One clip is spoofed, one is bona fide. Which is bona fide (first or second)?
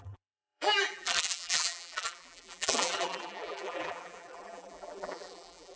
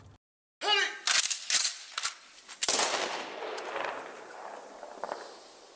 second